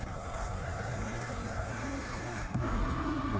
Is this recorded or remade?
remade